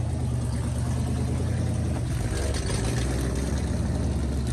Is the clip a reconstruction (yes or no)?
no